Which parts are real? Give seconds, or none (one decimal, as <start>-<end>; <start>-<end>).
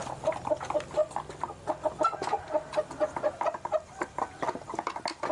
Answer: 0.0-5.3